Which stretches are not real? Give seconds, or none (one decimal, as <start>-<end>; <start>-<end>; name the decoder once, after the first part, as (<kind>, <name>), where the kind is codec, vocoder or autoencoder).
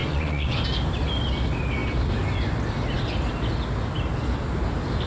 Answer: 0.0-0.6 (vocoder, Vocos)